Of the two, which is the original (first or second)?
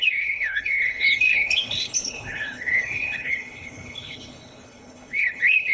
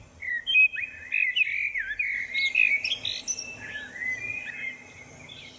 second